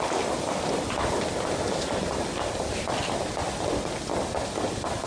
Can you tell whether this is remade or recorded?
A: recorded